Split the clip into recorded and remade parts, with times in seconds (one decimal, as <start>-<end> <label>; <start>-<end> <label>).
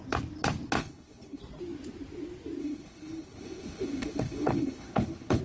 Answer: 0.0-0.8 recorded; 0.8-1.4 remade; 1.4-2.6 recorded; 2.6-5.4 remade